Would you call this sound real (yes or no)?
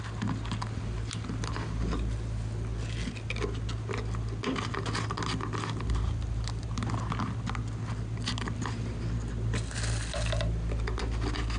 yes